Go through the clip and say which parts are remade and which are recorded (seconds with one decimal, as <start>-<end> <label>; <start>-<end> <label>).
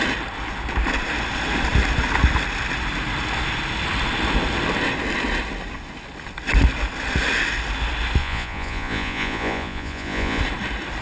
0.0-8.2 recorded; 8.2-10.4 remade; 10.4-11.0 recorded